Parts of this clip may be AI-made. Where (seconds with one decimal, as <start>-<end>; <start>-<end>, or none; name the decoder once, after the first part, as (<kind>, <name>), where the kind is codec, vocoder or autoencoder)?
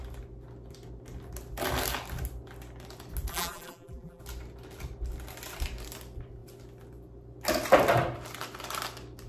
3.3-4.2 (vocoder, BigVGAN v2)